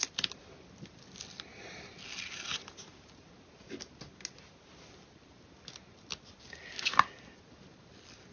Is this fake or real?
real